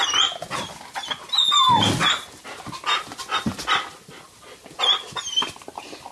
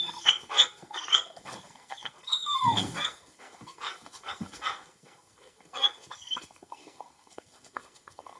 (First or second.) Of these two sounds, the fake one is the second